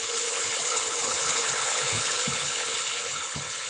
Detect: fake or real fake